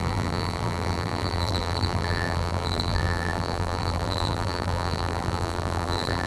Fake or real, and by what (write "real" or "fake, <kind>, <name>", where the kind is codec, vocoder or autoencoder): fake, vocoder, BigVGAN v2